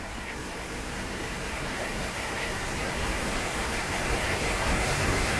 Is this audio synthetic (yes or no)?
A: yes